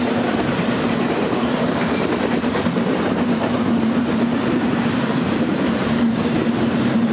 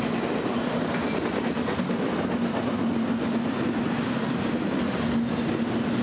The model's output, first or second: first